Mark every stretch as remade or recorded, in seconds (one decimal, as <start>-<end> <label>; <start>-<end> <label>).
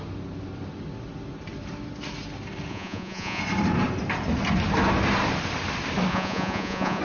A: 0.0-2.7 recorded; 2.7-3.4 remade; 3.4-6.1 recorded; 6.1-7.0 remade